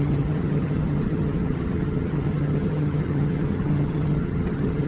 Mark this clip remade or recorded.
remade